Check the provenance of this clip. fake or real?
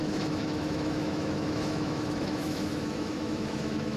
fake